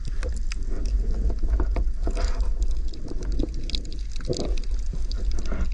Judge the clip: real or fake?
real